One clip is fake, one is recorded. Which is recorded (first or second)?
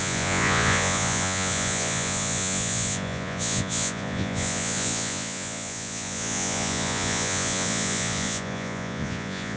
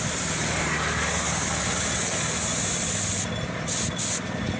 second